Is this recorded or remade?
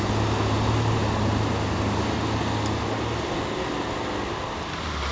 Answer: recorded